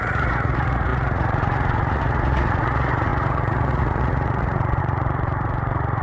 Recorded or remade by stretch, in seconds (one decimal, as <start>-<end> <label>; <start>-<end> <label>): 0.0-6.0 remade